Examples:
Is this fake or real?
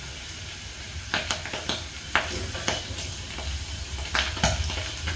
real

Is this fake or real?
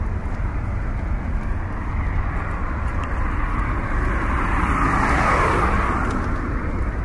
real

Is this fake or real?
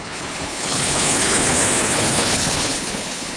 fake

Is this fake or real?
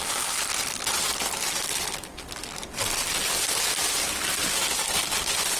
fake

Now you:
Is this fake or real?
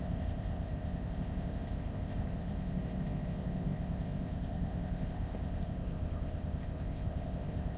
fake